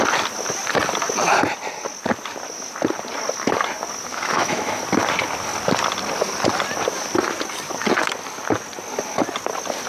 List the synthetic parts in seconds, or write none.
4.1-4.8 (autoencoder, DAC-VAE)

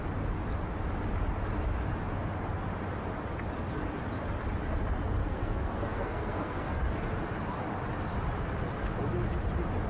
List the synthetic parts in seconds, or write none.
5.2-6.8 (codec, SNAC)

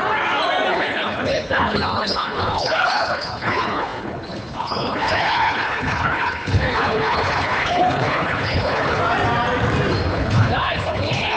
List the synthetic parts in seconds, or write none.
0.7-9.0 (codec, HILCodec); 10.1-11.4

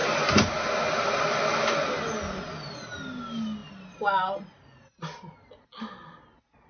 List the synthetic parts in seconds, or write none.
none

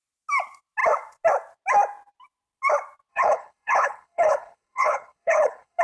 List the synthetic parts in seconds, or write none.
3.1-5.8 (codec, HILCodec)

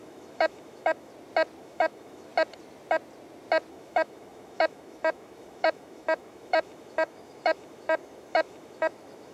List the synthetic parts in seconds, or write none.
0.0-1.1 (autoencoder, DAC-VAE); 1.6-2.3; 3.7-9.3